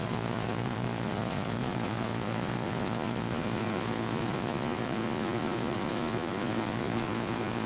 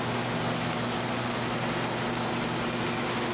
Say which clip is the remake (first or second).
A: first